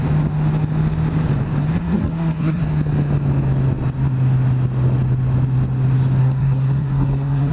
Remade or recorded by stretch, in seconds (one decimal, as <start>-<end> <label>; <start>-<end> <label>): 0.0-1.8 recorded; 1.8-2.6 remade; 2.6-6.2 recorded; 6.2-7.5 remade